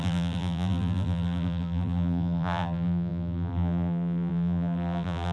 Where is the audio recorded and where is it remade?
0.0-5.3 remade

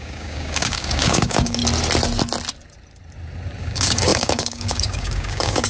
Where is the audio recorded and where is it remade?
0.0-1.6 remade; 1.6-3.6 recorded; 3.6-5.7 remade

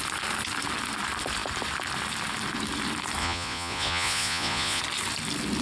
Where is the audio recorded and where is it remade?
0.0-3.2 recorded; 3.2-4.8 remade; 4.8-5.6 recorded

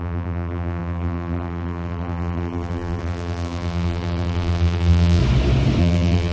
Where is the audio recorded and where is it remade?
0.0-5.2 remade; 5.2-5.8 recorded; 5.8-6.3 remade

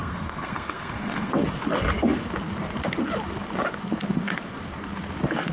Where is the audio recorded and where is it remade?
0.0-1.3 remade; 1.3-5.5 recorded

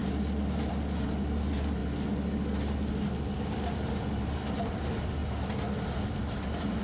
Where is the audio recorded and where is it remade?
0.0-0.7 recorded; 0.7-1.8 remade; 1.8-4.0 recorded; 4.0-5.2 remade; 5.2-6.1 recorded; 6.1-6.8 remade

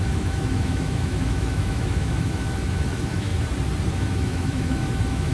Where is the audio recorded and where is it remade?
0.0-3.3 remade; 3.3-3.9 recorded; 3.9-5.3 remade

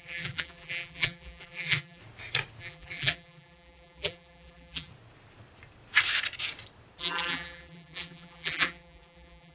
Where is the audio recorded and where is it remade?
0.0-2.0 remade; 2.0-2.6 recorded; 2.6-4.9 remade; 4.9-7.0 recorded; 7.0-9.5 remade